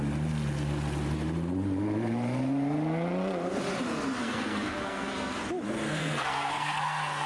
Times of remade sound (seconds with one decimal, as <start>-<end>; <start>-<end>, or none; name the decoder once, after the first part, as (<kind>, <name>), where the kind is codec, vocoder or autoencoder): 4.2-5.3 (codec, SNAC); 6.0-7.3